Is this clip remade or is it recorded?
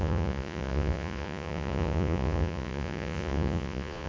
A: remade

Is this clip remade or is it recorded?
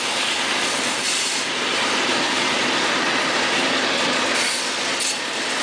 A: recorded